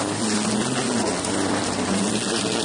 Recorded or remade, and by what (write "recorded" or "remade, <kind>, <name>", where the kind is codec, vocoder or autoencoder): recorded